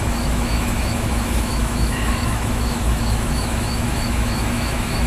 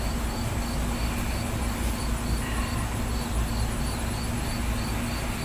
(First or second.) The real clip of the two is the second